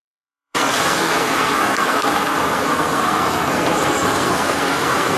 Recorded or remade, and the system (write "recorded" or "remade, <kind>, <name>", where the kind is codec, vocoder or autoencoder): remade, codec, SNAC